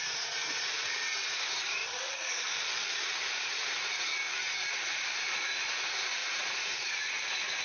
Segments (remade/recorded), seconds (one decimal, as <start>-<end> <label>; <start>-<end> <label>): 0.0-1.8 remade; 1.8-3.4 recorded; 3.4-4.1 remade; 4.1-4.7 recorded; 4.7-7.6 remade

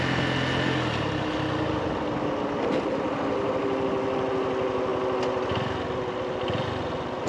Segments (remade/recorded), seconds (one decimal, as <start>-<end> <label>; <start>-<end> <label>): 0.0-7.3 recorded

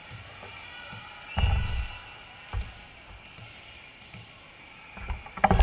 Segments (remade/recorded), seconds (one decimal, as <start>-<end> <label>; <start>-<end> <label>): 0.0-5.6 recorded

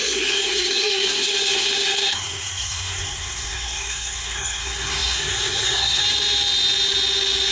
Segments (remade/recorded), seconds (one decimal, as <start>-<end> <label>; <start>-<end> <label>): 0.0-6.0 remade; 6.0-7.5 recorded